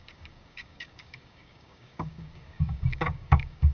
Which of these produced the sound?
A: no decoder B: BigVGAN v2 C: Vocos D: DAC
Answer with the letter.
D